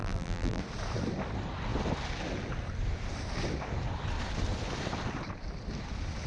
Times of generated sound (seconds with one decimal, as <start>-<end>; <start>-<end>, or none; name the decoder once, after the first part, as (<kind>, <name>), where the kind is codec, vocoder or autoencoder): 0.0-0.6 (vocoder, BigVGAN v2)